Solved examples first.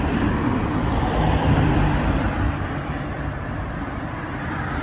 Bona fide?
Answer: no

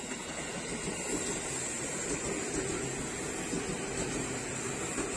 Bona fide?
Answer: yes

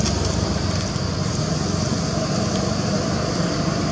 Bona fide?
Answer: yes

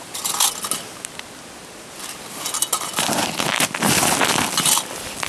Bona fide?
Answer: yes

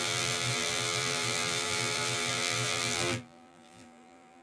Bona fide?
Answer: no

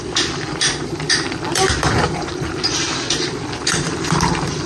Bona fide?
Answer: no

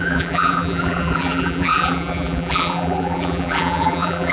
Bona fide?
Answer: no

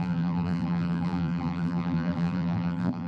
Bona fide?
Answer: no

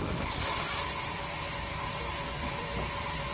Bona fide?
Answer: no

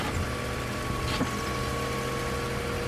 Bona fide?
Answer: yes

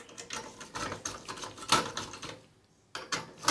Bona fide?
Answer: yes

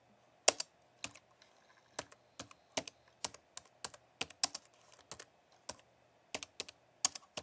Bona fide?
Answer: yes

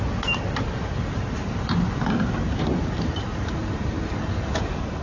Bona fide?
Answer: no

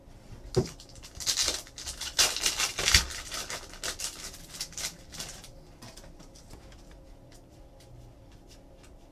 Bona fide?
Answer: yes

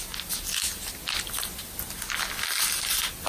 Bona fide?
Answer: yes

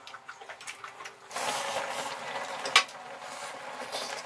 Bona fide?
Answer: yes